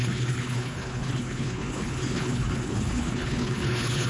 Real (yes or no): no